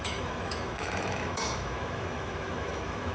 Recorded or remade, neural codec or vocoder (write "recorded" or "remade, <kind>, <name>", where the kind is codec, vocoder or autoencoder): remade, autoencoder, DAC-VAE